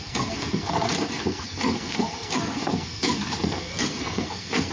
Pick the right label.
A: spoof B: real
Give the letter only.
A